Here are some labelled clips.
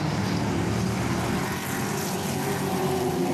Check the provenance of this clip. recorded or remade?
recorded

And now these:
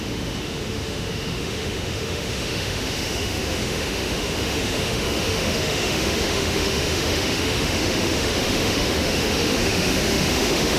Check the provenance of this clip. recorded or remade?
remade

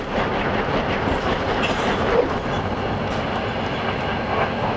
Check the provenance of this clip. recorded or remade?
recorded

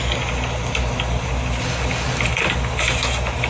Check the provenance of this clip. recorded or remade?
recorded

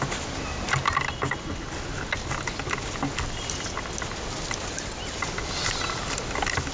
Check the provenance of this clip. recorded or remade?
recorded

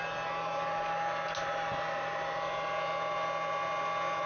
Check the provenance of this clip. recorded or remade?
recorded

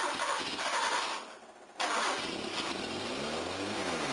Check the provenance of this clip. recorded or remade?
recorded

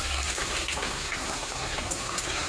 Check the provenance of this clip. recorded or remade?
remade